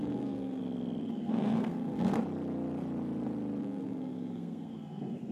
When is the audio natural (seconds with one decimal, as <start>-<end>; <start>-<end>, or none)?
0.6-1.0; 2.1-3.6